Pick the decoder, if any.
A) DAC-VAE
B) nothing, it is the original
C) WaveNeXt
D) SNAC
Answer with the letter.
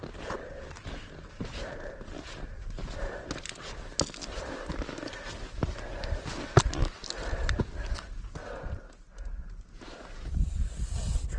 B